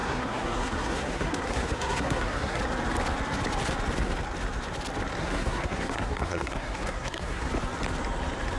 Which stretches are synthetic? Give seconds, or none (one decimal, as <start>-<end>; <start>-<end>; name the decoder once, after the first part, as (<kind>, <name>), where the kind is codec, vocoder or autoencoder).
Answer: 0.0-2.6 (codec, SNAC); 5.2-7.5